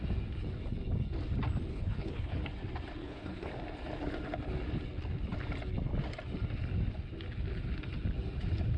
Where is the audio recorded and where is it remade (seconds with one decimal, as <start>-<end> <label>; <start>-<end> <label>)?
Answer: 0.0-1.7 recorded; 1.7-2.4 remade; 2.4-3.0 recorded; 3.0-3.5 remade; 3.5-8.8 recorded